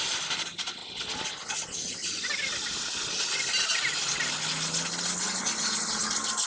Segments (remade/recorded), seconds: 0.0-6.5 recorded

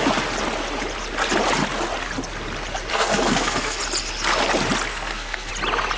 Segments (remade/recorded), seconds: 0.0-2.9 recorded; 2.9-3.8 remade; 3.8-4.9 recorded; 4.9-5.5 remade; 5.5-6.0 recorded

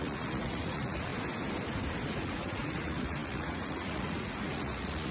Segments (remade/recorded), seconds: 0.0-1.1 remade; 1.1-2.1 recorded; 2.1-5.1 remade

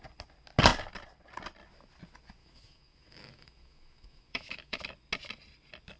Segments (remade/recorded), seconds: 0.0-2.4 recorded; 2.4-4.8 remade; 4.8-6.0 recorded

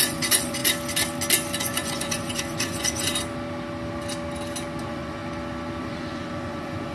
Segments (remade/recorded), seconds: 0.0-0.6 remade; 0.6-1.6 recorded; 1.6-3.1 remade; 3.1-4.8 recorded; 4.8-5.2 remade; 5.2-5.8 recorded; 5.8-6.9 remade

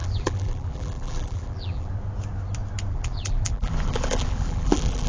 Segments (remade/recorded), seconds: 0.0-1.9 remade; 1.9-2.9 recorded; 2.9-5.1 remade

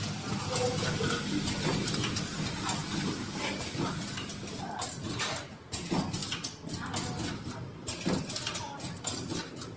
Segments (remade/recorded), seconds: 0.0-9.8 recorded

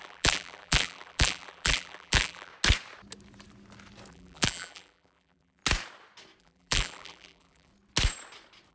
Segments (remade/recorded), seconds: 0.0-2.5 remade; 2.5-4.1 recorded; 4.1-5.6 remade; 5.6-6.4 recorded; 6.4-7.7 remade; 7.7-8.7 recorded